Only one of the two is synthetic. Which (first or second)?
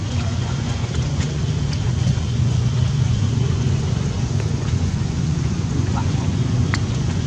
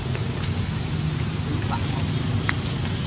first